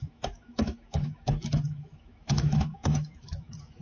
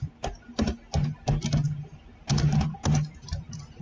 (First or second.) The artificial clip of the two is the first